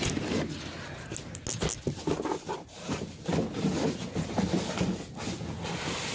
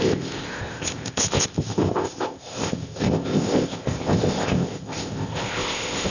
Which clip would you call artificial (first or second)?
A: second